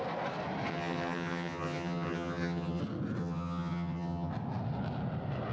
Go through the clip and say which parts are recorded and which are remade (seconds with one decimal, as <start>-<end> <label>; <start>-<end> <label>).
0.0-0.7 recorded; 0.7-2.8 remade; 2.8-3.2 recorded; 3.2-4.3 remade; 4.3-5.5 recorded